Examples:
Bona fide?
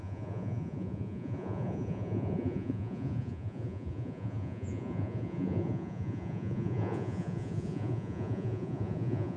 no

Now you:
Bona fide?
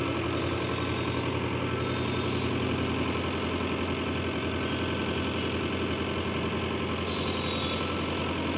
yes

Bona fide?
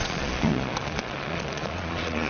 no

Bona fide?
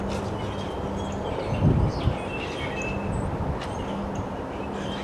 yes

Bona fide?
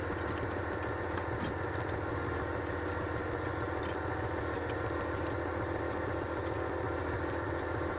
yes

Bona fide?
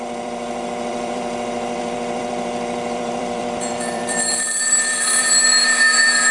no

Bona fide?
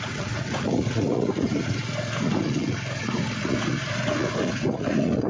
no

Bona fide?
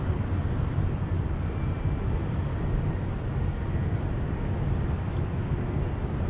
yes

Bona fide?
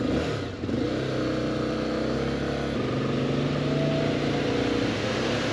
yes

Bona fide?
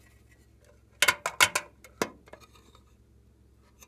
yes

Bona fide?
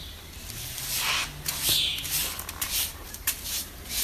yes